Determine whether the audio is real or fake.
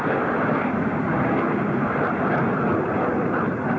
real